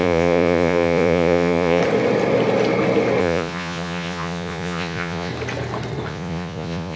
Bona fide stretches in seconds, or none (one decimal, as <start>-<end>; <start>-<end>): 1.8-3.2; 5.3-6.1

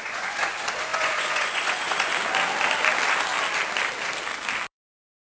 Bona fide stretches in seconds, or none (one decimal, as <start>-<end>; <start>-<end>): 2.1-4.7